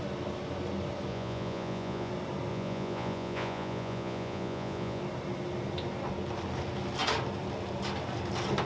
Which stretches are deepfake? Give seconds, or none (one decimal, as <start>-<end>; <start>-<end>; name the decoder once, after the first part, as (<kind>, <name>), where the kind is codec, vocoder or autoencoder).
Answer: 1.1-2.1 (vocoder, Vocos); 2.5-5.0